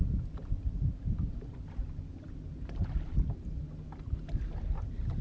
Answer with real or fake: real